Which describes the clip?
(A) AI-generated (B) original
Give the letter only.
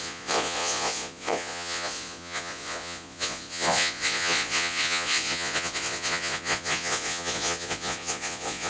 A